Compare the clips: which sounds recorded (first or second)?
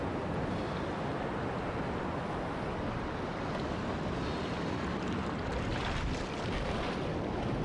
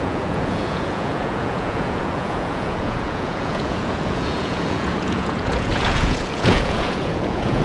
first